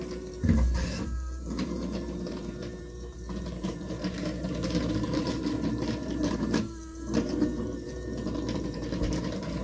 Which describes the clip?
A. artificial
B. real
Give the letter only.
A